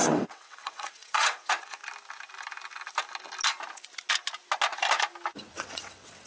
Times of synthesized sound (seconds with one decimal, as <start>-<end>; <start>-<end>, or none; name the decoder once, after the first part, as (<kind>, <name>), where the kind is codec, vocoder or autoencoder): 0.0-1.8 (vocoder, WaveNeXt); 5.4-6.3